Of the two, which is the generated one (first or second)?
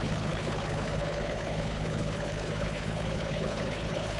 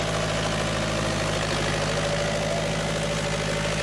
first